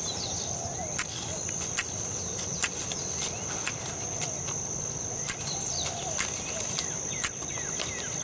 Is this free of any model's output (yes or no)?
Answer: no